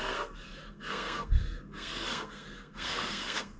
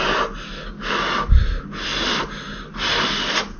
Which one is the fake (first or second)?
first